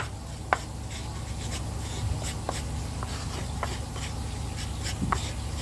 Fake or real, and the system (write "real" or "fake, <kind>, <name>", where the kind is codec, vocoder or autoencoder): real